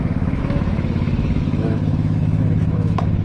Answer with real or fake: fake